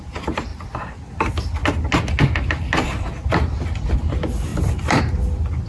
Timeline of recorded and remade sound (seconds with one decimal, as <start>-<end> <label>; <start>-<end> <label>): 0.0-5.7 recorded